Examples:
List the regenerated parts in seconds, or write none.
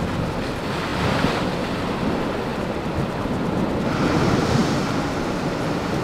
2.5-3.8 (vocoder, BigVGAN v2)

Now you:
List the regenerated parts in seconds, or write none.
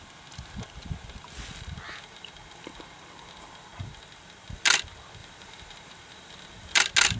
5.2-6.8 (vocoder, BigVGAN v2)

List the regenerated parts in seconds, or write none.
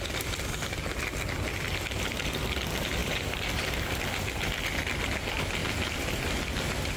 3.0-4.0 (vocoder, BigVGAN v2)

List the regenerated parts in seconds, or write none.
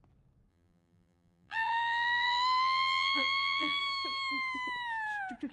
0.5-3.8 (vocoder, BigVGAN v2)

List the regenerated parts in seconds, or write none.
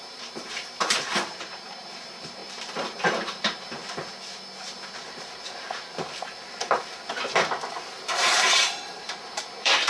0.0-3.8 (vocoder, BigVGAN v2); 7.7-9.9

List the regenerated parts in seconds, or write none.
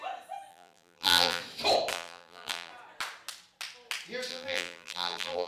0.5-1.4 (vocoder, BigVGAN v2); 1.9-2.7; 4.3-5.5